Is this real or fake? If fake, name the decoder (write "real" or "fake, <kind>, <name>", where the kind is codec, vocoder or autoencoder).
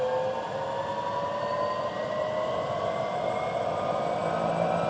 real